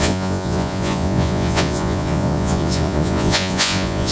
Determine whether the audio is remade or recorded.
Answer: remade